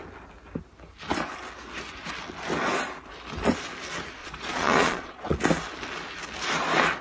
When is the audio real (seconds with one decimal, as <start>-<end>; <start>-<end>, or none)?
0.0-4.2; 5.4-7.0